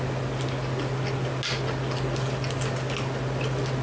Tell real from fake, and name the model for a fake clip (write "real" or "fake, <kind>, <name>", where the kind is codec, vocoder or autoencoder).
real